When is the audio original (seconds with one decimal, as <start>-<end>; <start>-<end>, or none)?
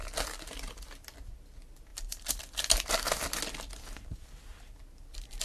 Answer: 0.0-1.9; 4.8-5.4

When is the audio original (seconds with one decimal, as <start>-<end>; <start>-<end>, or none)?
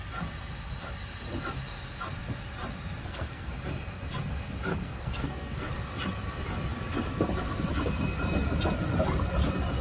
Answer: 0.0-3.0; 3.5-4.7; 5.7-9.8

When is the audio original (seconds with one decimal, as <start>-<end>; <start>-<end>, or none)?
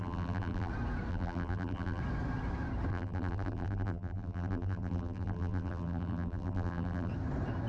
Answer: 0.7-1.1; 2.0-2.9; 7.1-7.7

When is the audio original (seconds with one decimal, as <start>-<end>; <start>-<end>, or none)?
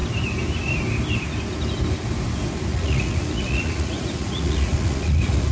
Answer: 0.0-2.7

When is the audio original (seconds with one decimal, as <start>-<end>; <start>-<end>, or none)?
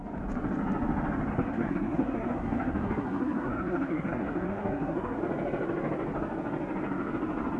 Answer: 0.0-1.3; 5.2-7.6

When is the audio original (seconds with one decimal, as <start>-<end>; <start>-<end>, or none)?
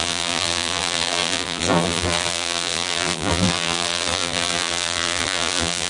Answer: none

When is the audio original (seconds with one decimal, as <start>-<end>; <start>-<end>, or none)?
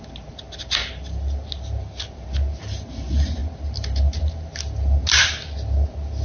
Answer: 0.0-0.8; 1.5-3.4; 4.6-6.2